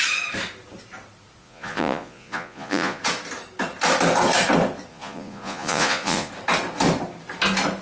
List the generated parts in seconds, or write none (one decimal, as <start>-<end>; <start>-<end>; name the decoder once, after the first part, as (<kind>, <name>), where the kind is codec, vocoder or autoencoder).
1.4-3.0 (vocoder, Vocos); 4.9-6.3